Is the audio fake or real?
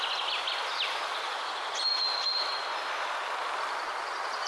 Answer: real